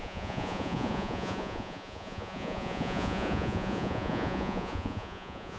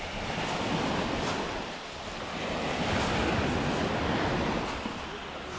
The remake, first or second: first